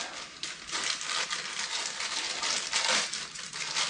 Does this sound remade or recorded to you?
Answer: recorded